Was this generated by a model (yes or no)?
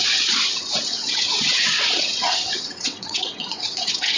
yes